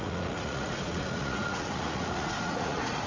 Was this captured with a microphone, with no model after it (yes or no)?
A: no